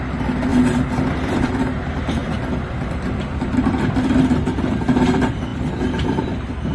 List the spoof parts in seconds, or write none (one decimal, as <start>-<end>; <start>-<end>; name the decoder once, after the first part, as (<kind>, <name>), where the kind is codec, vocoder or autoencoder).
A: 0.0-0.5 (vocoder, BigVGAN v2); 1.3-2.2; 3.6-5.5; 6.2-6.7